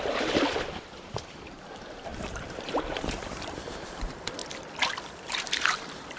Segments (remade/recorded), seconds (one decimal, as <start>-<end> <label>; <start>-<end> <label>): 0.0-4.4 remade; 4.4-5.2 recorded; 5.2-6.2 remade